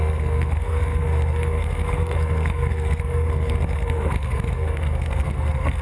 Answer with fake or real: fake